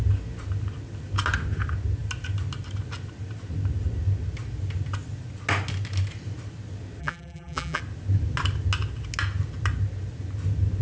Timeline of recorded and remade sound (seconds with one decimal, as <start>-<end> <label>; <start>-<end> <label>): 0.0-7.0 recorded; 7.0-7.8 remade; 7.8-10.8 recorded